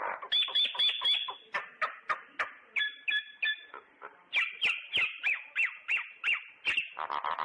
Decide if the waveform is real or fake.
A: real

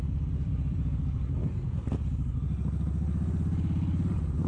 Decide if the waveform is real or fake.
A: real